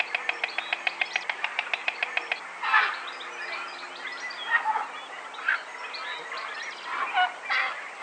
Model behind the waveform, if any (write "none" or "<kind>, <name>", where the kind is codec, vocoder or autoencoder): none